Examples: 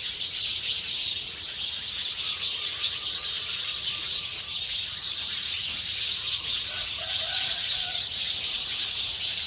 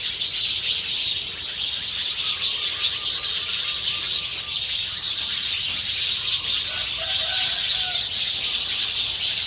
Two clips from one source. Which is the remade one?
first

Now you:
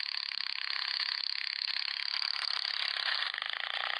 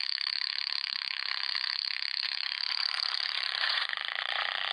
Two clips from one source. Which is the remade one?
second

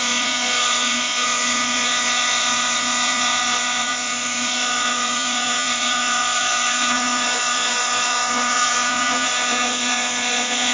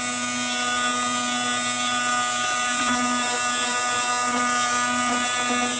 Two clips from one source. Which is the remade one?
first